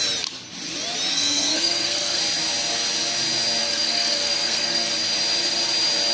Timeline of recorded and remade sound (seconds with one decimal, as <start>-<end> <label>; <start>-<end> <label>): 0.0-1.1 recorded; 1.1-2.2 remade; 2.2-3.6 recorded; 3.6-4.9 remade; 4.9-6.1 recorded